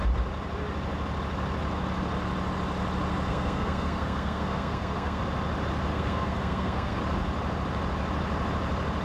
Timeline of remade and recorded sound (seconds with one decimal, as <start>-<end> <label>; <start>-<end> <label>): 0.0-3.3 recorded; 3.3-5.2 remade; 5.2-5.9 recorded; 5.9-7.0 remade; 7.0-9.0 recorded